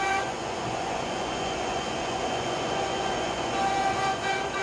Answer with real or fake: fake